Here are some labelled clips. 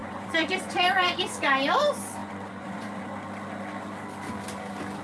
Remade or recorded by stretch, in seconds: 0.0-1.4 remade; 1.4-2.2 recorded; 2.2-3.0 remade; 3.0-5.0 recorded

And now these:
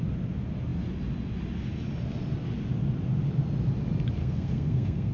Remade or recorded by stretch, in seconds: 0.0-4.2 recorded; 4.2-5.1 remade

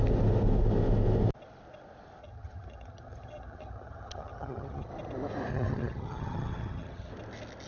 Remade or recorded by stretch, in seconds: 0.0-2.2 recorded; 2.2-4.9 remade; 4.9-5.5 recorded; 5.5-7.1 remade; 7.1-7.7 recorded

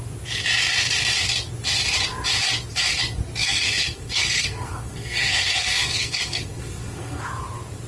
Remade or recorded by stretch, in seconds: 0.0-3.4 recorded; 3.4-7.2 remade; 7.2-7.9 recorded

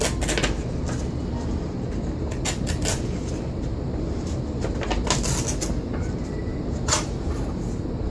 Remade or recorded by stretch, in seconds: 0.0-3.7 recorded; 3.7-4.4 remade; 4.4-6.5 recorded; 6.5-7.6 remade; 7.6-8.1 recorded

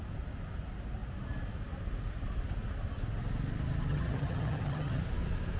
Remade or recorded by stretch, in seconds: 0.0-3.9 recorded; 3.9-5.0 remade; 5.0-5.6 recorded

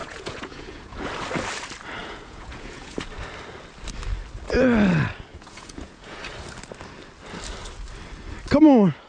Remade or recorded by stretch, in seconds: 0.0-1.1 remade; 1.1-2.0 recorded; 2.0-3.1 remade; 3.1-5.3 recorded; 5.3-6.2 remade; 6.2-9.1 recorded

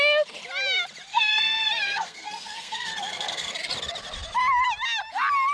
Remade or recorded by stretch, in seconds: 0.0-1.1 recorded; 1.1-3.5 remade; 3.5-5.5 recorded